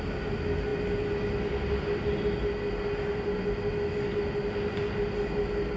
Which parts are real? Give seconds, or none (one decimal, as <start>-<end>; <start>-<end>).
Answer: 0.0-5.8